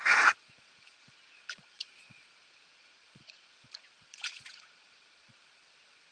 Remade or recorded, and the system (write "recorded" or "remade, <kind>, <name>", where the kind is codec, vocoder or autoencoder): remade, vocoder, Vocos